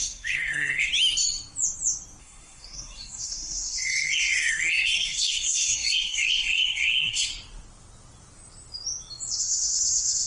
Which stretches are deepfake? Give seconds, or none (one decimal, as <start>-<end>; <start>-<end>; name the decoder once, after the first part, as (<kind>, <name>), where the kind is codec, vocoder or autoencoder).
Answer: 0.0-0.9 (codec, SNAC); 2.2-7.3; 9.4-10.3